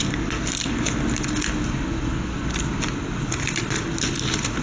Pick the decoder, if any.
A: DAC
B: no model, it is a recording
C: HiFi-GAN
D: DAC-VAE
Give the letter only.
B